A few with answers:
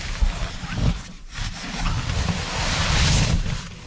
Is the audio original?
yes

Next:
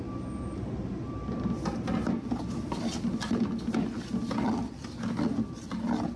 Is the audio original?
yes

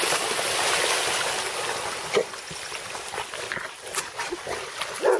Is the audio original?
yes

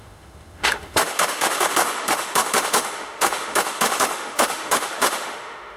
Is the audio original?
no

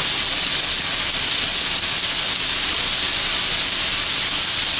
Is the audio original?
yes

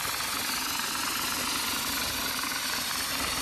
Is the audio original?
yes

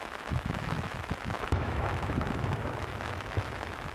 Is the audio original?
no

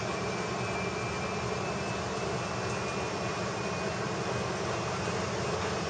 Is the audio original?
yes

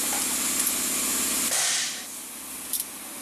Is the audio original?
yes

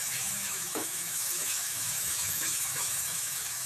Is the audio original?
no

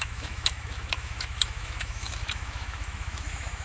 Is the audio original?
no